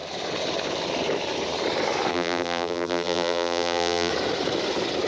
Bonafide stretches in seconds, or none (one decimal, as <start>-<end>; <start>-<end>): 0.0-2.1; 4.1-5.1